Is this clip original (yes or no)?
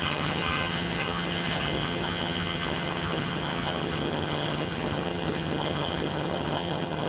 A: no